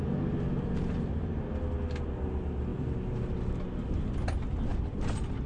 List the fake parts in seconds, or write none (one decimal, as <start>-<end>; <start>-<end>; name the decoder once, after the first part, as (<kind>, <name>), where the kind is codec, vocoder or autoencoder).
none